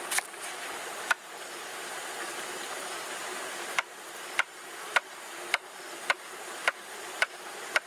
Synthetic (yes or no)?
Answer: no